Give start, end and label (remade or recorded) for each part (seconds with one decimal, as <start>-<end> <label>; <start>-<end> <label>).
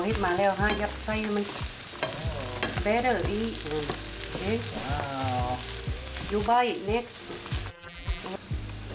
0.0-7.7 recorded; 7.7-8.2 remade; 8.2-8.9 recorded